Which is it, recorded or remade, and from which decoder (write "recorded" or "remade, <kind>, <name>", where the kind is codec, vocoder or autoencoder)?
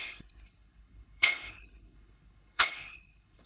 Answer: remade, codec, HILCodec